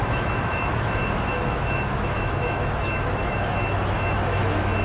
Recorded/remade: remade